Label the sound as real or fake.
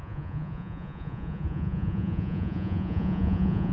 fake